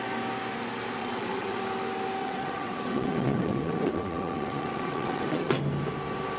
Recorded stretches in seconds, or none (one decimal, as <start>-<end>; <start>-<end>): 0.0-1.0; 1.6-2.2; 5.6-6.4